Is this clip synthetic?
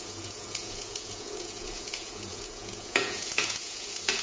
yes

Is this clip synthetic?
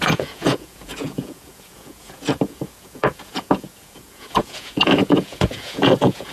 yes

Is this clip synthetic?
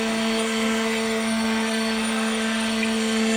yes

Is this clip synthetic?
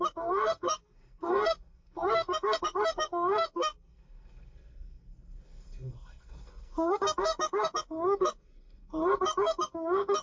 yes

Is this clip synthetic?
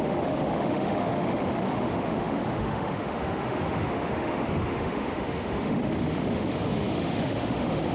yes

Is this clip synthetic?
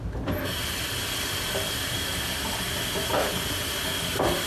no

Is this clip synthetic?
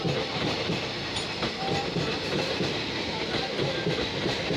no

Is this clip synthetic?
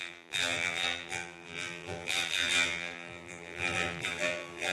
yes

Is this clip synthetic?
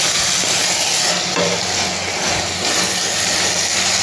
no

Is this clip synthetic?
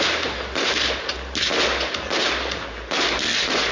no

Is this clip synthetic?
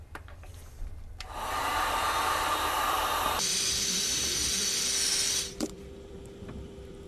yes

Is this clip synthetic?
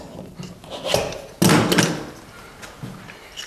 no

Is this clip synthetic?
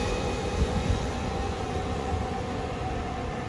yes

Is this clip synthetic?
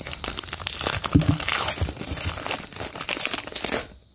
no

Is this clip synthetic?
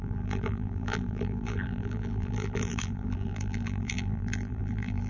yes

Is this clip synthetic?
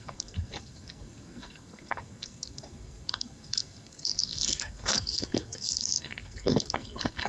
yes